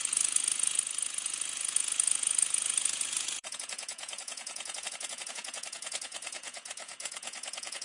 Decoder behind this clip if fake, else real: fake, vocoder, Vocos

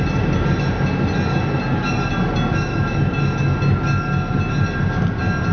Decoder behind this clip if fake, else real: real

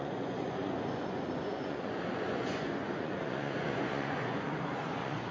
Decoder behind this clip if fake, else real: fake, vocoder, Vocos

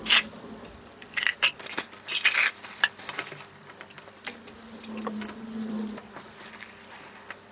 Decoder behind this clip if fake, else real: real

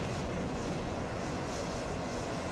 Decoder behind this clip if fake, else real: fake, vocoder, Vocos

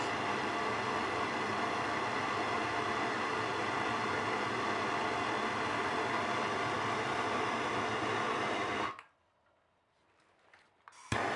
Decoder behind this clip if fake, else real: real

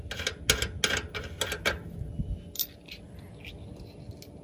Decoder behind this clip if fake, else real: real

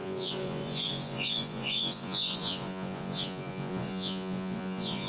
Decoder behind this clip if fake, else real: fake, vocoder, Vocos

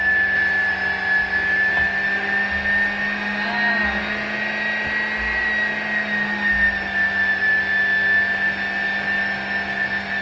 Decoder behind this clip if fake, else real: real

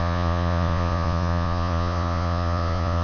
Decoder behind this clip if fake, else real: fake, vocoder, Vocos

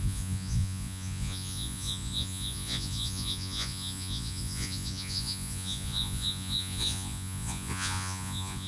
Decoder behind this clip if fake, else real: fake, vocoder, Vocos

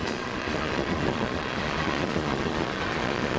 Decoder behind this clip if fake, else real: fake, vocoder, Vocos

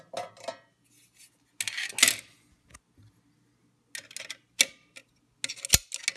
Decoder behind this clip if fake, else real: real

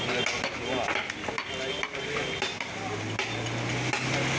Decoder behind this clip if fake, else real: real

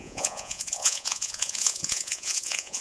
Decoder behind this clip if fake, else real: fake, vocoder, Vocos